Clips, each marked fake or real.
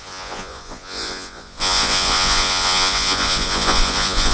fake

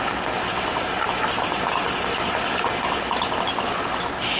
real